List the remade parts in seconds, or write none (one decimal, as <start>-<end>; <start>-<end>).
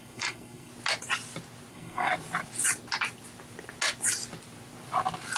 0.0-0.7; 1.7-2.1